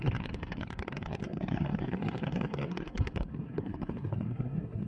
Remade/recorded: remade